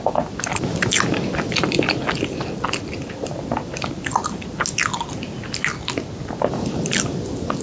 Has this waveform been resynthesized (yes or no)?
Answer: no